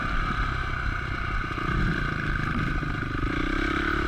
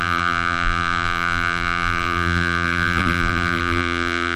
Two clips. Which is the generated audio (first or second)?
second